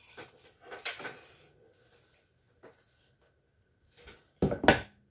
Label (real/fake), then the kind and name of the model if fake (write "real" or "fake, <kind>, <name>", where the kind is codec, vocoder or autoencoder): real